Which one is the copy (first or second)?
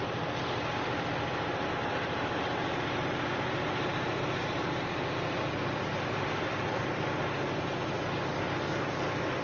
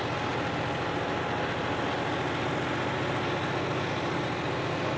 first